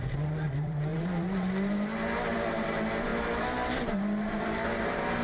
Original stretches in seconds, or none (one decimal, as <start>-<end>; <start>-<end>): 1.9-2.5

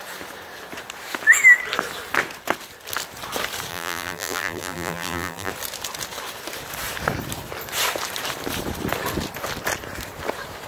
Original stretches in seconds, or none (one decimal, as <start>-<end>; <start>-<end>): 0.0-3.7; 5.5-10.7

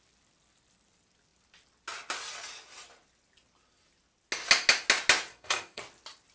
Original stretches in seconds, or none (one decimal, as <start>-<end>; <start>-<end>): 0.0-5.3; 5.8-6.3